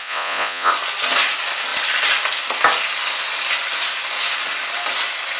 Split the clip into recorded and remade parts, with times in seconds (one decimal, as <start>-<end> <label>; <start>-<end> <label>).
0.0-0.7 remade; 0.7-5.4 recorded